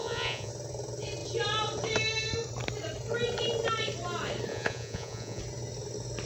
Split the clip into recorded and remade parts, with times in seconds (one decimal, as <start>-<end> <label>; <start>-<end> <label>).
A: 0.0-0.5 remade; 0.5-4.5 recorded; 4.5-5.4 remade; 5.4-6.3 recorded